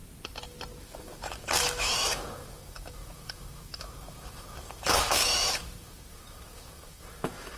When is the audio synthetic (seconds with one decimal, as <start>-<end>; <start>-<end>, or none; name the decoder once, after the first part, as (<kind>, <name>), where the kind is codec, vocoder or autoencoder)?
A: 0.8-7.6 (autoencoder, DAC-VAE)